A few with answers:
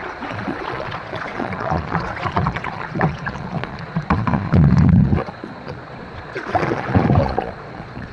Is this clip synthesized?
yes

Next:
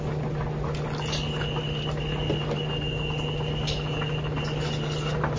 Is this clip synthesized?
no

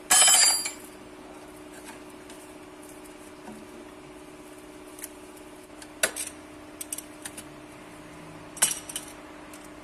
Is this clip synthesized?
no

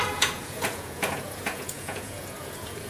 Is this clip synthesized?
yes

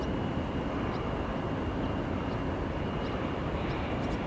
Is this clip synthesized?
no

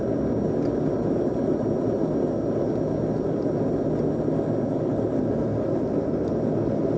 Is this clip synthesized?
no